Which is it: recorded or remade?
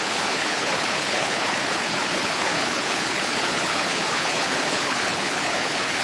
remade